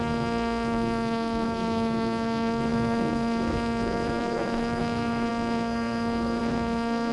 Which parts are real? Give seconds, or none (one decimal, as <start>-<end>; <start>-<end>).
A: none